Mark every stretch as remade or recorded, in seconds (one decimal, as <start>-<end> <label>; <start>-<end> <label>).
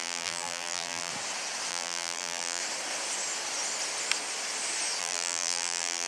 0.0-1.1 remade; 1.1-1.7 recorded; 1.7-2.6 remade; 2.6-5.0 recorded; 5.0-6.1 remade